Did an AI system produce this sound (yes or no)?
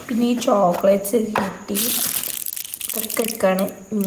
no